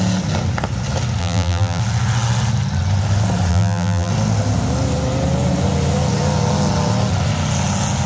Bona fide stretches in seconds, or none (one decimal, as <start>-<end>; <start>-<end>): 0.0-1.2; 1.8-3.5; 4.1-8.1